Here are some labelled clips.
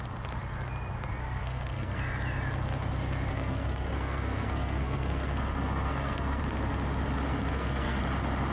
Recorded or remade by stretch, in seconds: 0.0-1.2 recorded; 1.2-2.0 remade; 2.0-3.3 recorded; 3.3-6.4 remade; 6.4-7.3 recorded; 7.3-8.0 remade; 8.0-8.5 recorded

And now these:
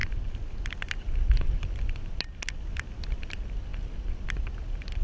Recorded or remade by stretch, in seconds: 0.0-5.0 recorded

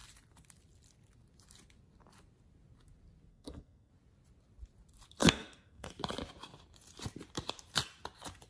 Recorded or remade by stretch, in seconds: 0.0-3.3 recorded; 3.3-3.9 remade; 3.9-5.2 recorded; 5.2-5.9 remade; 5.9-8.5 recorded

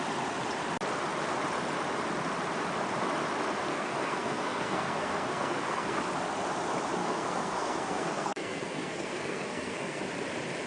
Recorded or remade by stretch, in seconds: 0.0-3.7 recorded; 3.7-6.0 remade; 6.0-7.0 recorded; 7.0-10.0 remade; 10.0-10.7 recorded

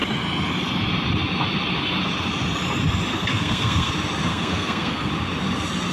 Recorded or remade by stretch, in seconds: 0.0-3.1 recorded; 3.1-3.9 remade; 3.9-4.3 recorded; 4.3-5.1 remade; 5.1-5.9 recorded

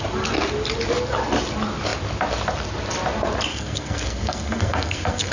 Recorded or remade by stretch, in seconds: 0.0-3.5 recorded; 3.5-5.3 remade